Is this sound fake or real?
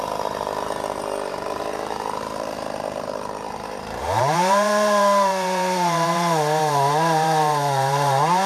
fake